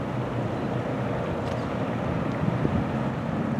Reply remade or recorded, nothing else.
recorded